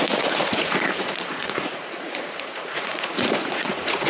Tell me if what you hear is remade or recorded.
remade